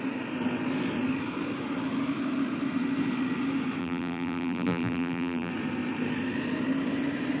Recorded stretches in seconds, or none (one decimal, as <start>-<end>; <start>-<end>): 0.0-3.8; 5.5-7.4